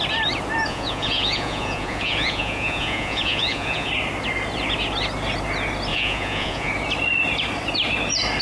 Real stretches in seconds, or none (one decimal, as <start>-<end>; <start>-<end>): 0.0-0.7; 3.9-5.9; 6.7-8.4